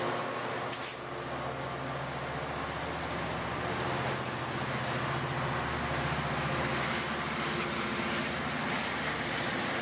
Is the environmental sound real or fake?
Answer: real